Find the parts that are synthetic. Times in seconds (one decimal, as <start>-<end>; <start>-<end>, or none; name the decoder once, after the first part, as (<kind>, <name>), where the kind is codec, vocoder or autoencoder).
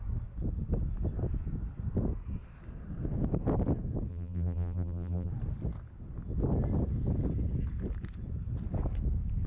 4.1-5.3 (vocoder, BigVGAN v2)